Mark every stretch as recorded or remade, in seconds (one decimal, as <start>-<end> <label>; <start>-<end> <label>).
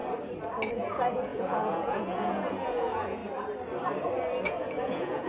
0.0-0.7 recorded; 0.7-3.2 remade; 3.2-4.4 recorded; 4.4-5.3 remade